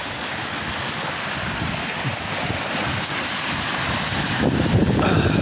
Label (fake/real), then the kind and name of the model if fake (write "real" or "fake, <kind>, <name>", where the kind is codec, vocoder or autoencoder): real